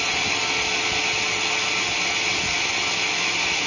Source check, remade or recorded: recorded